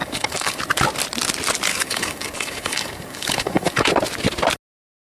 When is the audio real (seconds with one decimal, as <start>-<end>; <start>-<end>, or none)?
0.6-1.7; 3.9-5.0